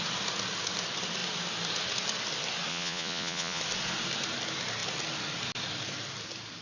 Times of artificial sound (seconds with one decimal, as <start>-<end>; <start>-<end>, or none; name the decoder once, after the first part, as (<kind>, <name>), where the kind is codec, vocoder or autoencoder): 2.7-3.6 (vocoder, Vocos)